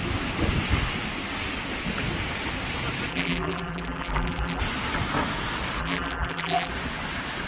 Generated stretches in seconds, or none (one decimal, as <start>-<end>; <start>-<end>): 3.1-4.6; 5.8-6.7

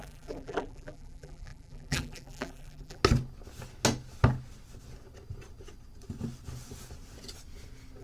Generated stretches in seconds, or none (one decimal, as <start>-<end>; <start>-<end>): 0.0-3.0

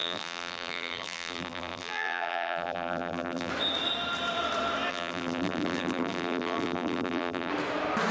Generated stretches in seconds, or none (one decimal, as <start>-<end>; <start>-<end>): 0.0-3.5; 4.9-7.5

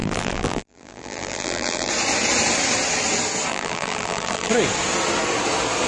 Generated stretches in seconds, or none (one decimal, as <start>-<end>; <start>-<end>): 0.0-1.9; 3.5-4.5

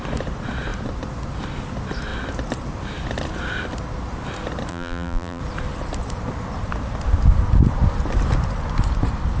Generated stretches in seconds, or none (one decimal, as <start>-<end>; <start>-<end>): 4.7-5.4

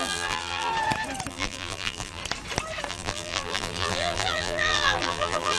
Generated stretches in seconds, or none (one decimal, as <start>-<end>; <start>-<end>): 0.0-0.7; 1.3-2.2; 2.9-5.6